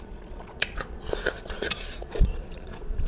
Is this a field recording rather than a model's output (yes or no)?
no